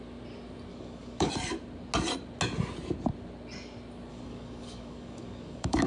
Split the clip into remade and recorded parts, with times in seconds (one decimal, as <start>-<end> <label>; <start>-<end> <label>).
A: 0.0-0.7 recorded; 0.7-1.3 remade; 1.3-4.1 recorded; 4.1-5.9 remade